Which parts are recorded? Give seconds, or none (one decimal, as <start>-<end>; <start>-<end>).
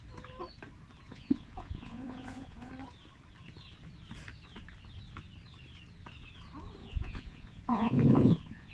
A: 0.0-1.1; 2.7-6.8